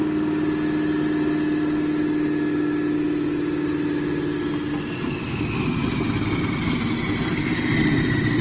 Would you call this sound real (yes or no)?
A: yes